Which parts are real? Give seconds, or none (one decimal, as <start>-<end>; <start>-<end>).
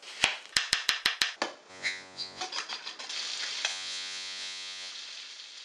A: 0.0-1.7; 2.4-3.7; 4.9-5.6